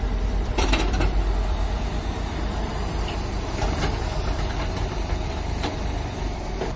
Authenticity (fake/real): fake